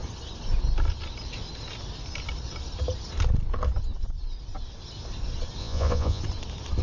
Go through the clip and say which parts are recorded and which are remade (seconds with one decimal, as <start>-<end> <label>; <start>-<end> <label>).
0.0-5.6 recorded; 5.6-6.2 remade; 6.2-6.8 recorded